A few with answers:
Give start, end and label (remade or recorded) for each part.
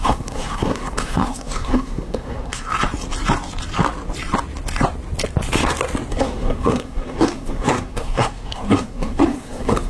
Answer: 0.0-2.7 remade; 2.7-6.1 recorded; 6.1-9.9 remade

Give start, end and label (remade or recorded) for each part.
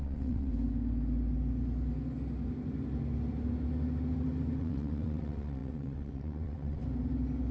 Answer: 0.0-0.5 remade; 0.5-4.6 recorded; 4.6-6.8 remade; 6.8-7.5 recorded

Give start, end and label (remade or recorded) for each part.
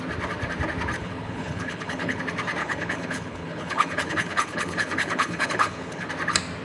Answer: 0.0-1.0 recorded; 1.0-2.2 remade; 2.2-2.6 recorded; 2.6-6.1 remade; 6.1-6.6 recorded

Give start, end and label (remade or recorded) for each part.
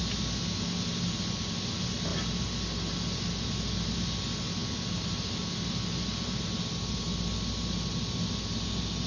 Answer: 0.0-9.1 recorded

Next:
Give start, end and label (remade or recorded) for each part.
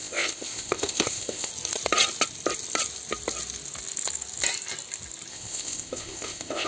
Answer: 0.0-1.5 remade; 1.5-5.3 recorded; 5.3-6.7 remade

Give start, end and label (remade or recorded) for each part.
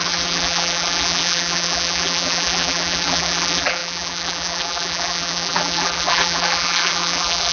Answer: 0.0-7.5 remade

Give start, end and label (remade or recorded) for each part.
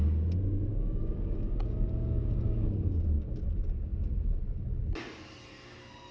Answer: 0.0-0.7 recorded; 0.7-2.7 remade; 2.7-6.1 recorded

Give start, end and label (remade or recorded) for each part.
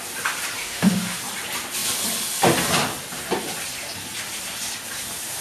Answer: 0.0-0.6 recorded; 0.6-1.2 remade; 1.2-5.4 recorded